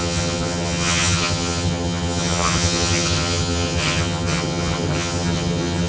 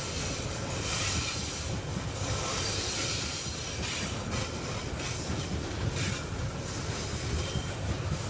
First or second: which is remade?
first